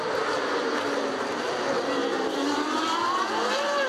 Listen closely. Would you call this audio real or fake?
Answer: fake